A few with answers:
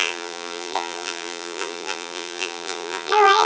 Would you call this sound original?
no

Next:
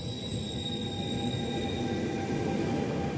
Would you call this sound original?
yes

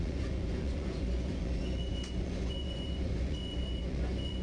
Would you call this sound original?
no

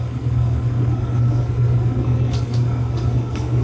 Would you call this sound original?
no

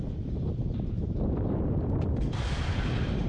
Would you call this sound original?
no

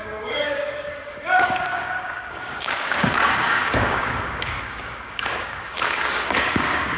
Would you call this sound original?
no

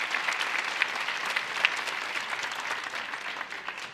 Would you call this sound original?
yes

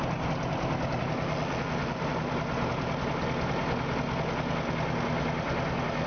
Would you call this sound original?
yes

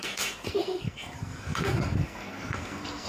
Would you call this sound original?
no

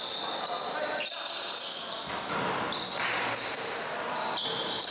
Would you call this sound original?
yes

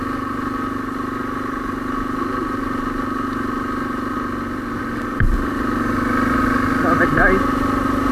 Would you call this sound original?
yes